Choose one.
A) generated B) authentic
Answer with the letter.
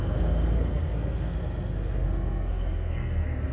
A